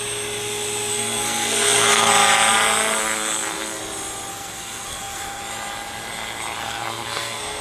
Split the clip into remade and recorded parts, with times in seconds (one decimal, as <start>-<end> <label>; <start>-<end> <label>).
0.0-0.9 recorded; 0.9-2.1 remade; 2.1-3.0 recorded; 3.0-3.8 remade; 3.8-4.3 recorded; 4.3-5.4 remade; 5.4-6.6 recorded; 6.6-7.6 remade